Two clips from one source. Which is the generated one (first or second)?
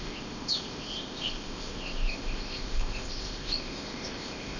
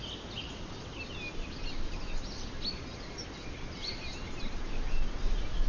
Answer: first